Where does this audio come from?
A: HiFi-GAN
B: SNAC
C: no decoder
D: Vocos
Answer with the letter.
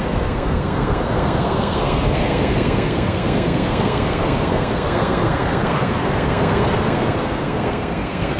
B